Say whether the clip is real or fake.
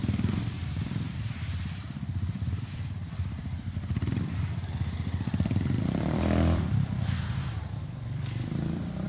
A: fake